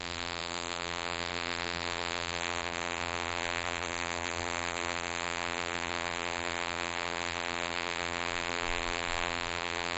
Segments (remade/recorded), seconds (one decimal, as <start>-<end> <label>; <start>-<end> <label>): 0.0-10.0 remade